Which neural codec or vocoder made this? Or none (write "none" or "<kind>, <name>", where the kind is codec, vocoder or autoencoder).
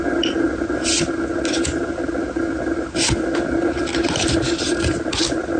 none